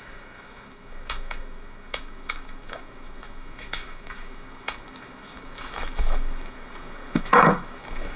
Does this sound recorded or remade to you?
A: remade